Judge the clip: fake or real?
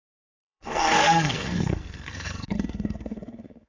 fake